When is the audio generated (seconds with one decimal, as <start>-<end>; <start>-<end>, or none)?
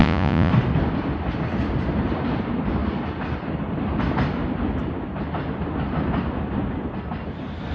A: 0.0-0.5